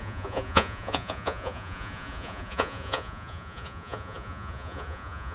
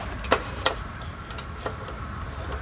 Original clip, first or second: second